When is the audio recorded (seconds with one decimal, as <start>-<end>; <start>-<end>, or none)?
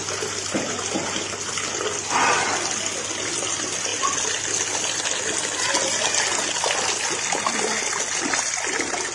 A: 0.8-9.1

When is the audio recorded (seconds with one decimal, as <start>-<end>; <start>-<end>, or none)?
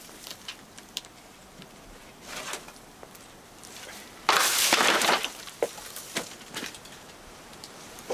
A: 2.0-3.2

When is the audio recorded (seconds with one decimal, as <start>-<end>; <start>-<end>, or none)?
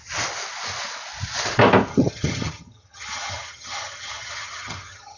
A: 0.0-1.9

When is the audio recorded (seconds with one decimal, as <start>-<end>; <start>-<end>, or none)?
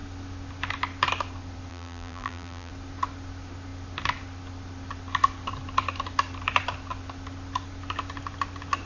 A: 0.0-1.7; 2.7-8.9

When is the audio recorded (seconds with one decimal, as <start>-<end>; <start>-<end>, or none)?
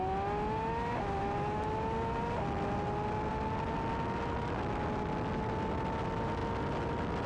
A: 0.0-7.3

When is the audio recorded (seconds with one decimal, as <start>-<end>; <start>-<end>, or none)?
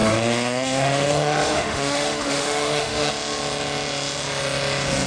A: 3.1-5.1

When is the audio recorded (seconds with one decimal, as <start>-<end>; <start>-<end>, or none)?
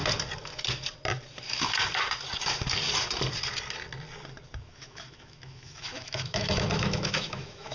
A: 0.0-4.6